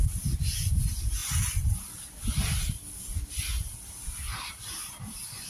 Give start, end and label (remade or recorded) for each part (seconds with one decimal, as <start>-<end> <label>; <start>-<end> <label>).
0.0-5.5 recorded